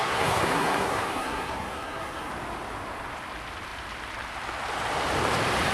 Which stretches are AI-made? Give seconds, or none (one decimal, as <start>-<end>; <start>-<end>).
0.0-2.3